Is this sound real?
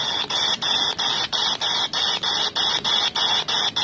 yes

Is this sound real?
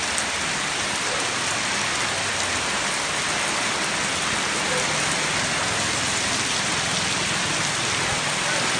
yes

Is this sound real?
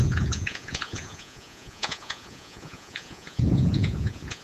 no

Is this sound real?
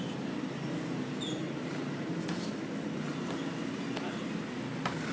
yes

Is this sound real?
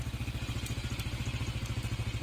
yes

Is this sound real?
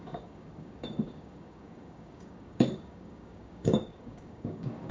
no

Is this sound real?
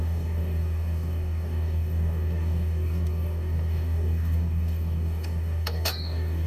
no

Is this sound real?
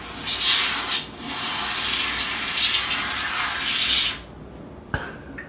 yes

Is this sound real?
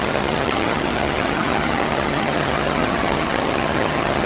no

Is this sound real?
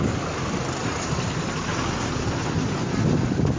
yes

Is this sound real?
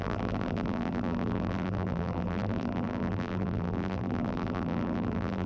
no